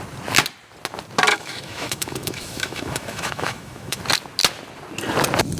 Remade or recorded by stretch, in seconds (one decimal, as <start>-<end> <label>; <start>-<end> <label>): 0.0-1.3 recorded; 1.3-4.0 remade; 4.0-5.6 recorded